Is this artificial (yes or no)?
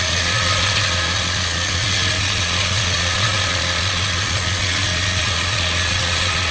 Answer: yes